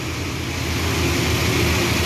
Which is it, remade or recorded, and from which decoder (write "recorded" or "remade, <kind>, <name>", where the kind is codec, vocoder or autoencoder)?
recorded